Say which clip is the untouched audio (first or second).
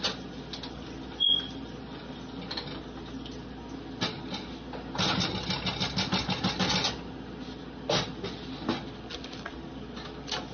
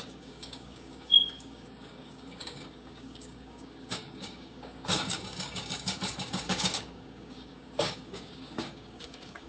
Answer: first